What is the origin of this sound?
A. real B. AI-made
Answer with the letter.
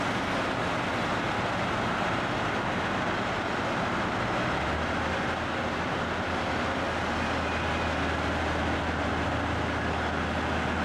A